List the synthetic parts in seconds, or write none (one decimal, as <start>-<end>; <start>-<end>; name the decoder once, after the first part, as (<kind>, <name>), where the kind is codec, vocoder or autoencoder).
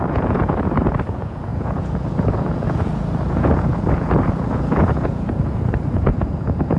0.0-6.8 (vocoder, Vocos)